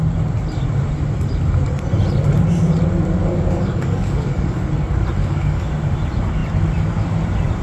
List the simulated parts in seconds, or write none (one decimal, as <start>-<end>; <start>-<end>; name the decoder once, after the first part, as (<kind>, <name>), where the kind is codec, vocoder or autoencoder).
3.2-4.7 (codec, DAC); 5.2-5.7